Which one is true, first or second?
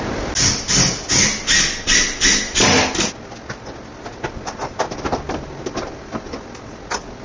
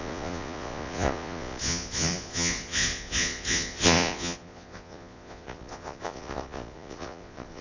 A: first